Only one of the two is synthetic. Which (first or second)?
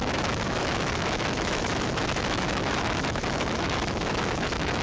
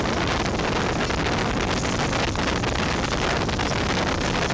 first